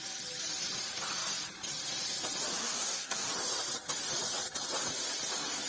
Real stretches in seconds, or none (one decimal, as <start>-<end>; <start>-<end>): 0.0-2.6; 3.3-5.7